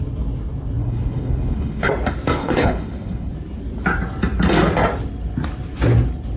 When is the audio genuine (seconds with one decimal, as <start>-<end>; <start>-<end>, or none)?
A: 0.0-0.8; 1.9-2.4; 3.3-6.4